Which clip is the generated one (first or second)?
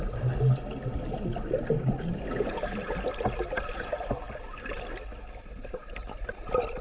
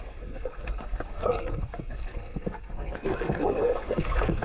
second